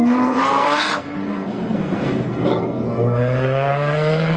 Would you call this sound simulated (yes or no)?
yes